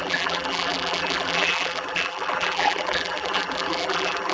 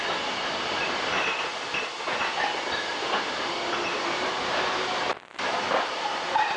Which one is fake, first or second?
first